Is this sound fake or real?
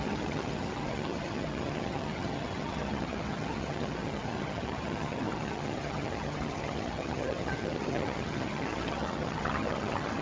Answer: fake